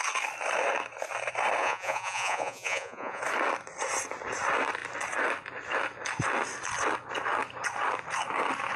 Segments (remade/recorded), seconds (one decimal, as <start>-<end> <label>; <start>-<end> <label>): 0.0-1.6 recorded; 1.6-3.2 remade; 3.2-8.8 recorded